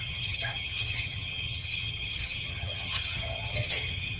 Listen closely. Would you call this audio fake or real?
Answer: fake